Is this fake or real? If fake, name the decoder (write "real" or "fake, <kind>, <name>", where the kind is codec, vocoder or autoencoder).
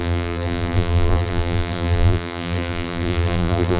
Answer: fake, vocoder, BigVGAN v2